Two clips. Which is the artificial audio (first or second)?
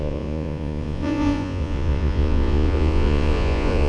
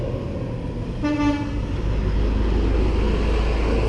first